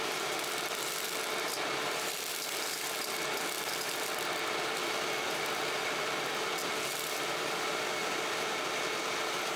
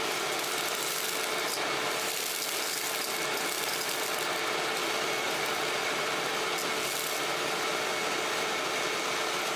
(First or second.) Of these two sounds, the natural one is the second